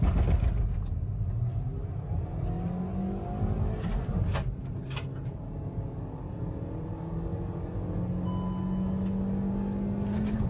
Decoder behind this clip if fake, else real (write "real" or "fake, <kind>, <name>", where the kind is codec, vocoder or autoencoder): real